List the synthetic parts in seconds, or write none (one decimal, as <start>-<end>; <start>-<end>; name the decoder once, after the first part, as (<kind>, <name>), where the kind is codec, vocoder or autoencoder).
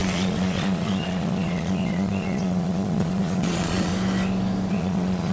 0.0-3.9 (vocoder, Vocos); 4.7-5.3